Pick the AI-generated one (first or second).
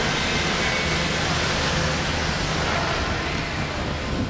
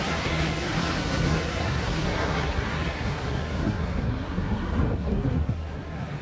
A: second